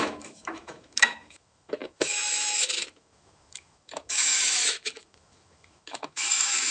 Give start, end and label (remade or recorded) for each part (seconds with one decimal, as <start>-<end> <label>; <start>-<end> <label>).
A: 0.0-6.7 remade